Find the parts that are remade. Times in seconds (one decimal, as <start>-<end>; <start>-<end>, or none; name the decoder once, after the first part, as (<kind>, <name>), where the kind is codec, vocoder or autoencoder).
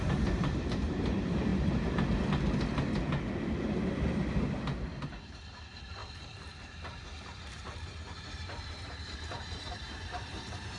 0.0-1.5 (vocoder, BigVGAN v2); 5.1-10.8